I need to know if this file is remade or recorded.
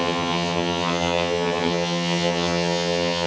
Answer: remade